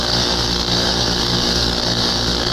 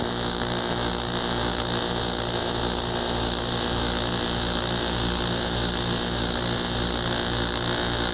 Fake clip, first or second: first